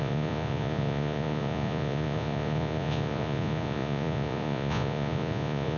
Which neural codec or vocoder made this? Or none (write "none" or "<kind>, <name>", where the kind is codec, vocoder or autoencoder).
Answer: vocoder, Vocos